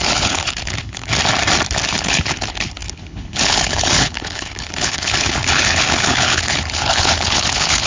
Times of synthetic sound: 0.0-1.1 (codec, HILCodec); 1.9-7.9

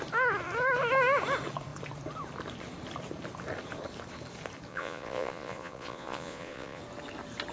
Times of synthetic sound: 4.7-6.8 (vocoder, Vocos)

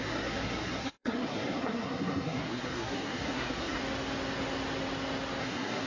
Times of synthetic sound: 0.0-3.8 (codec, SNAC); 5.4-5.9

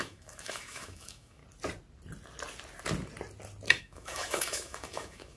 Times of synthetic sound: 0.0-1.4 (autoencoder, DAC-VAE); 3.8-5.4

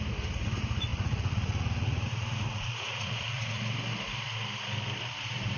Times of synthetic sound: 0.9-3.6 (vocoder, Vocos)

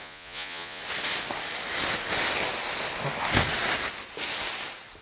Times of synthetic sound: 0.0-0.8 (vocoder, Vocos)